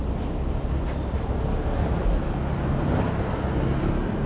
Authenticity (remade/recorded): recorded